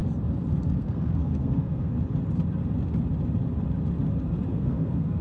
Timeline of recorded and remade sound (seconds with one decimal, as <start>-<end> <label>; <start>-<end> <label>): 0.0-0.8 recorded; 0.8-1.9 remade; 1.9-4.5 recorded; 4.5-5.2 remade